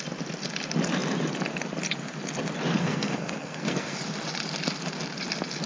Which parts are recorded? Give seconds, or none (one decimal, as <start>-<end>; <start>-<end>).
0.0-2.8; 4.0-5.7